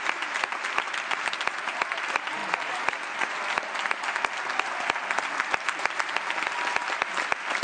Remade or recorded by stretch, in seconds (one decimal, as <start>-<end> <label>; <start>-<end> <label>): 0.0-7.6 recorded